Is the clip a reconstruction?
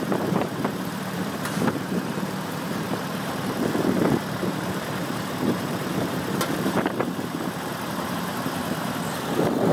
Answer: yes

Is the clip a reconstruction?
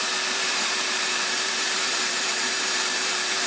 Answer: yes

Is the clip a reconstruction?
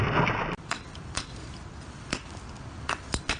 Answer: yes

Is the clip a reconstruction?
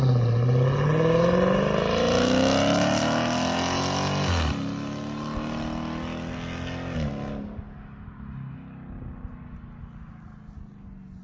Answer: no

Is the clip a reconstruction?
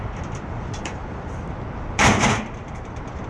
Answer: yes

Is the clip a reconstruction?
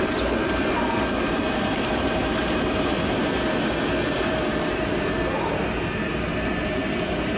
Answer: yes